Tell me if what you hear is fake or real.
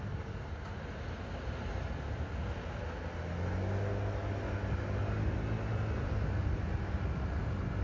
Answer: real